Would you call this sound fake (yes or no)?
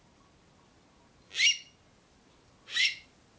no